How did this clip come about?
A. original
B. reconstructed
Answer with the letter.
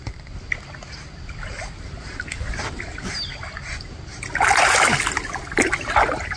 A